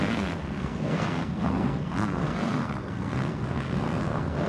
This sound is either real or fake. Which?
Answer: fake